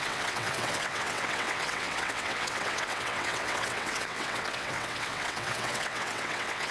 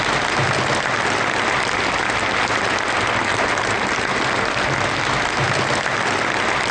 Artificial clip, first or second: first